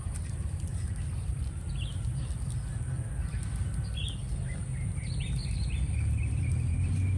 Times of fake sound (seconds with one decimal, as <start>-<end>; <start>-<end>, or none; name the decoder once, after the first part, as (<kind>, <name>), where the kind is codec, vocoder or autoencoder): 0.7-2.2 (vocoder, BigVGAN v2); 5.4-6.5